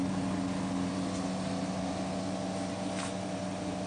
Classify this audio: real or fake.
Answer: real